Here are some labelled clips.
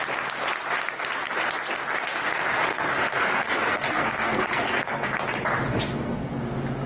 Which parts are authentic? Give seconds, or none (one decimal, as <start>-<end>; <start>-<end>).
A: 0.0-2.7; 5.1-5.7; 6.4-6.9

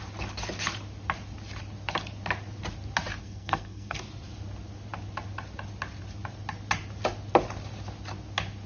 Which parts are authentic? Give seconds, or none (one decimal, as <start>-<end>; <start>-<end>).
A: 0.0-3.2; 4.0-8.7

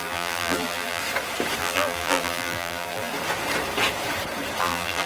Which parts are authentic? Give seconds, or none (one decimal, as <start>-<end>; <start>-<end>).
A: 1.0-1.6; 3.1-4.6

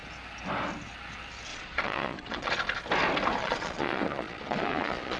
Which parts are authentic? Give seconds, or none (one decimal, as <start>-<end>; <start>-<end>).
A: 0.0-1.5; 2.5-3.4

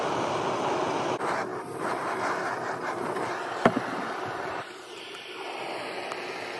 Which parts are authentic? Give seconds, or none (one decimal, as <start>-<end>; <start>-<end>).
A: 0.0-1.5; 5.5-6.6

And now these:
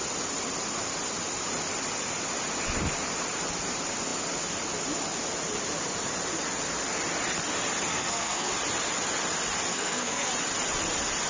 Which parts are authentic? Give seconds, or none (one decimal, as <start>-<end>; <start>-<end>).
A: 0.0-7.9; 8.5-9.7; 10.3-11.3